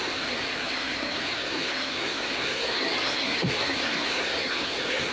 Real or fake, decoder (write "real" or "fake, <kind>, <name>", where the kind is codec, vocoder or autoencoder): fake, codec, SNAC